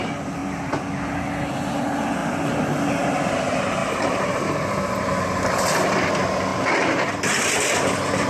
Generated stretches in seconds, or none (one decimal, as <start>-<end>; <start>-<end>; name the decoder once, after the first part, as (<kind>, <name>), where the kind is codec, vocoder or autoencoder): 3.8-4.5 (vocoder, BigVGAN v2)